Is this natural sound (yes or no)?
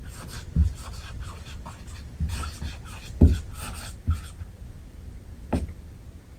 yes